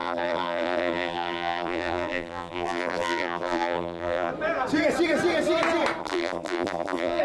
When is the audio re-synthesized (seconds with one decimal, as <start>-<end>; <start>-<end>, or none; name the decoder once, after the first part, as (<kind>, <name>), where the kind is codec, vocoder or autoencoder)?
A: 0.0-4.3 (vocoder, BigVGAN v2); 6.0-7.2